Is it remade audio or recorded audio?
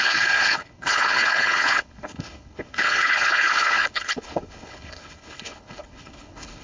remade